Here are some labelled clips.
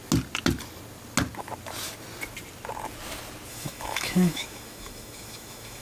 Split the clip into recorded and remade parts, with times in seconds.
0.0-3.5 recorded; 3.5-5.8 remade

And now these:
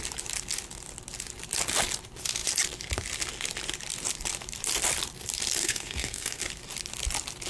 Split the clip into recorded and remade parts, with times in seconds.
0.0-5.6 recorded; 5.6-6.4 remade; 6.4-7.5 recorded

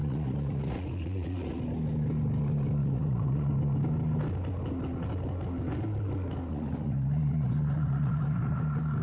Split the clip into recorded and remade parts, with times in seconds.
0.0-1.6 remade; 1.6-2.8 recorded; 2.8-3.5 remade; 3.5-6.5 recorded; 6.5-8.6 remade; 8.6-9.0 recorded

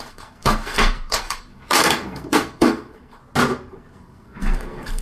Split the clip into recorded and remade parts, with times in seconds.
0.0-3.2 remade; 3.2-3.7 recorded; 3.7-5.0 remade

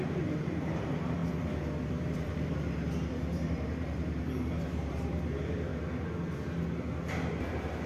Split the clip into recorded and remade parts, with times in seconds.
0.0-1.2 remade; 1.2-1.9 recorded; 1.9-5.7 remade; 5.7-7.5 recorded; 7.5-7.9 remade

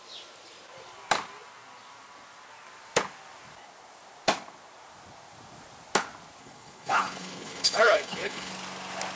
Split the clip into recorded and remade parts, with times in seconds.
0.0-6.4 recorded; 6.4-8.5 remade; 8.5-9.2 recorded

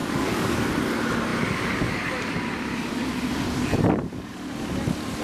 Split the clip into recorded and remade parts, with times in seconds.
0.0-0.6 remade; 0.6-5.2 recorded

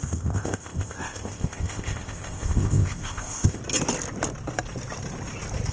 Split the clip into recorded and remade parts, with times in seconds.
0.0-3.6 remade; 3.6-5.7 recorded